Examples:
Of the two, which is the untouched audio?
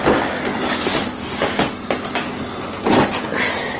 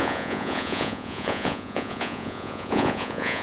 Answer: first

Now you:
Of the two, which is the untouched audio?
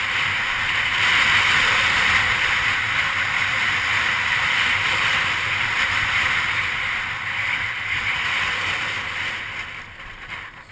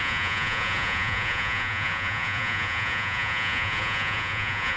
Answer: first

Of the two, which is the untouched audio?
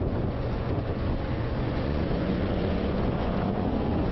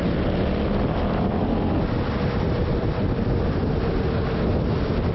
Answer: second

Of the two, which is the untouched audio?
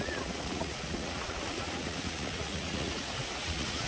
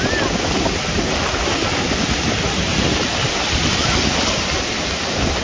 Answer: second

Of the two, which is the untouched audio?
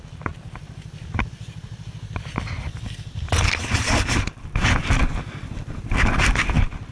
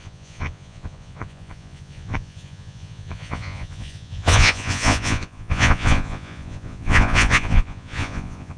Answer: first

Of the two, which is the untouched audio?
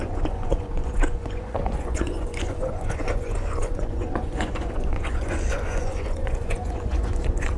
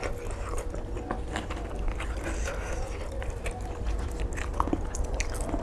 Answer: second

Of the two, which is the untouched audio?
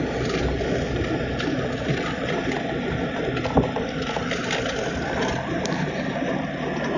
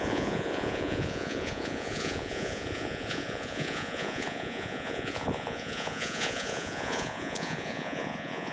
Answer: first